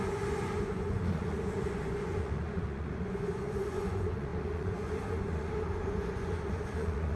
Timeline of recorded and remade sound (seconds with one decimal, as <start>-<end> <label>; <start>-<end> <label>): 0.0-7.2 remade